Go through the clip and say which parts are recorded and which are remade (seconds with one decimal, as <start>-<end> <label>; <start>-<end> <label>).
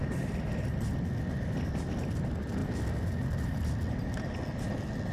0.0-5.1 recorded